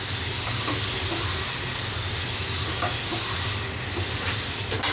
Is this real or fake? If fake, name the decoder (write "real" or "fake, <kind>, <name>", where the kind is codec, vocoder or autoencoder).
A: real